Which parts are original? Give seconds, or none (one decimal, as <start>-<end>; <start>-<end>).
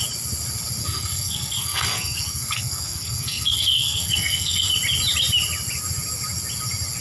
0.0-0.8; 4.7-7.0